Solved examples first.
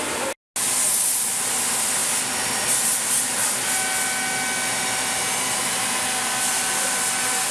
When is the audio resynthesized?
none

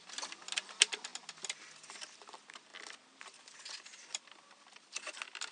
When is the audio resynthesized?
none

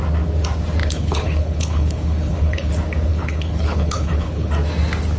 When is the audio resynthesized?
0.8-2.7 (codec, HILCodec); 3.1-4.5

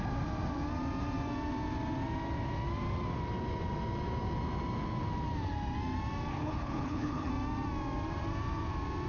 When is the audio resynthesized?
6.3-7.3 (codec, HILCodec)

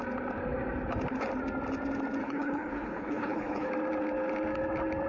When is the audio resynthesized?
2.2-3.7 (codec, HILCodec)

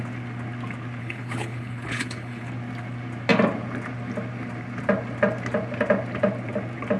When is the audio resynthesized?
1.0-2.5 (codec, HILCodec)